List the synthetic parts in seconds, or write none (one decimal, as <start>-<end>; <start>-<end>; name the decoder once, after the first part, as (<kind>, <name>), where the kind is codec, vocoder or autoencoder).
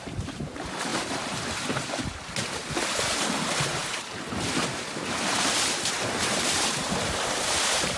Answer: 0.0-8.0 (vocoder, BigVGAN v2)